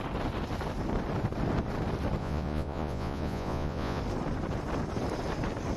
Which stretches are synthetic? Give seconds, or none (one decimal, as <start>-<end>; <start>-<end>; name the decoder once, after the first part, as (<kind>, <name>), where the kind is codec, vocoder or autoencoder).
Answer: 2.2-4.0 (vocoder, Vocos)